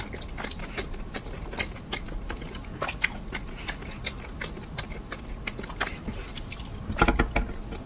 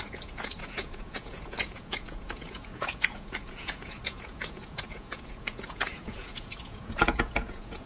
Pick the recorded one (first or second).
first